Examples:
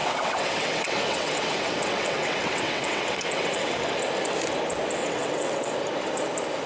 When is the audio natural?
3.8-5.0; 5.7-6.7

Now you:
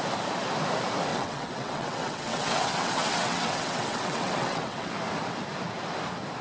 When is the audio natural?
0.0-1.1; 4.9-6.4

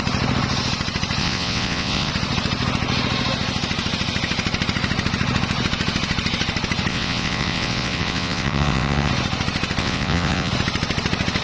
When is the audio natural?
0.0-1.2; 2.1-6.9; 9.1-9.8; 10.5-11.4

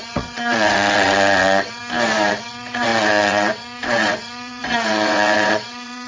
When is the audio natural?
1.8-2.3